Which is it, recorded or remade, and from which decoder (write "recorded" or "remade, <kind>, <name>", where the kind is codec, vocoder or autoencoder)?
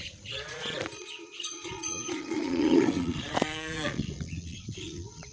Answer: remade, vocoder, Vocos